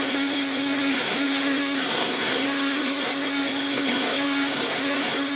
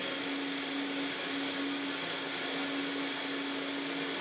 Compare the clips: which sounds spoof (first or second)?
first